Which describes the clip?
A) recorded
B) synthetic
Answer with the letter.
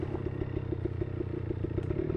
A